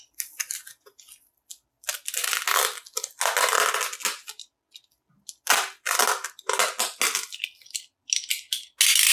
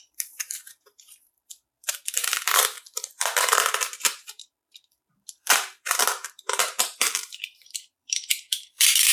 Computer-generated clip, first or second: second